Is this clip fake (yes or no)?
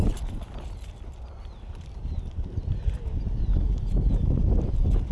no